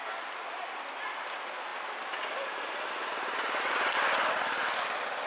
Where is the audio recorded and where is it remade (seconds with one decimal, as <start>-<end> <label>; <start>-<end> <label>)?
0.0-5.3 recorded